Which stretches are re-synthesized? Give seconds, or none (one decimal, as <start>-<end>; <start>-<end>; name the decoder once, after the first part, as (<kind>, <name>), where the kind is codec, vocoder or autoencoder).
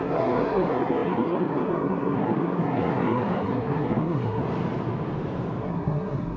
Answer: 0.0-4.4 (codec, SNAC); 5.6-6.4